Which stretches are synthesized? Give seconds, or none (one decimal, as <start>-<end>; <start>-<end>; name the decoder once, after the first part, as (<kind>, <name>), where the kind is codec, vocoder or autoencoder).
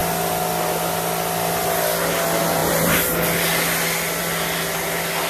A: none